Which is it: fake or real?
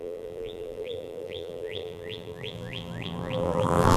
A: fake